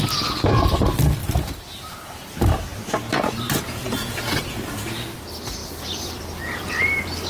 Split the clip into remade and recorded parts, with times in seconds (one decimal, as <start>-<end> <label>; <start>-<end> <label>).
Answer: 0.0-1.2 recorded; 1.2-2.0 remade; 2.0-5.6 recorded; 5.6-6.2 remade; 6.2-7.3 recorded